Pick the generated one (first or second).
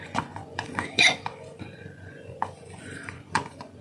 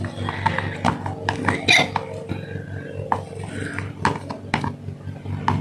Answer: first